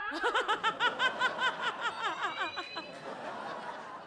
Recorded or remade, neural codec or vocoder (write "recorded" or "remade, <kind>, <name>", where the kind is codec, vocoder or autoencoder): recorded